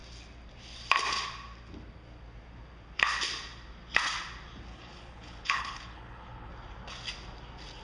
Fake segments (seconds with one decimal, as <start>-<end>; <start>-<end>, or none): 4.7-6.5